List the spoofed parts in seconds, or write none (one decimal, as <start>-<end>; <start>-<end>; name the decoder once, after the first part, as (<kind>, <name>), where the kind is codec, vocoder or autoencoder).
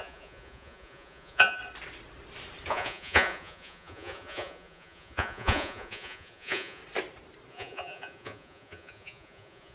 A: 0.0-1.6 (vocoder, Vocos); 2.7-6.8; 7.5-9.7